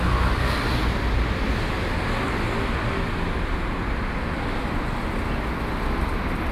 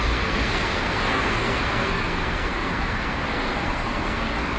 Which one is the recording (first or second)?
first